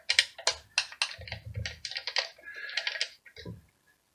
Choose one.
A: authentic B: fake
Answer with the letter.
A